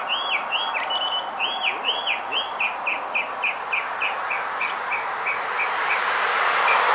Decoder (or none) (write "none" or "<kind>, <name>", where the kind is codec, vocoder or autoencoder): none